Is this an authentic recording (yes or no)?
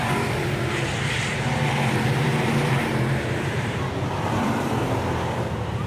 no